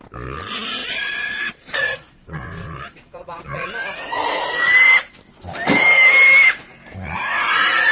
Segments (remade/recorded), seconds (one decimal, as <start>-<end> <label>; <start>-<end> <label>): 0.0-0.8 recorded; 0.8-3.7 remade; 3.7-7.9 recorded